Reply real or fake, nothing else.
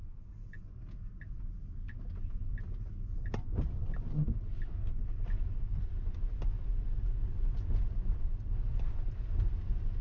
real